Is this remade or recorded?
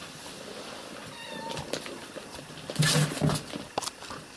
recorded